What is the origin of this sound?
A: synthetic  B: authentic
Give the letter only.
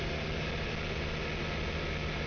B